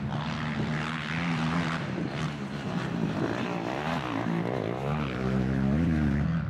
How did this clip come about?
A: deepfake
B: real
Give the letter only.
B